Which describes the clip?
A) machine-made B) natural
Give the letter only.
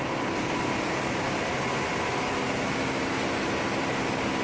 B